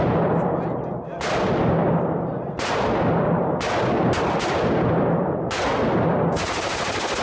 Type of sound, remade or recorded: recorded